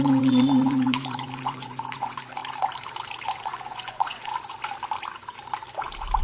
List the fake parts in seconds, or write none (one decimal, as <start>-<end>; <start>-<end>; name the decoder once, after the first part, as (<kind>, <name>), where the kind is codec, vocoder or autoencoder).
0.0-2.4 (vocoder, Vocos); 3.4-4.3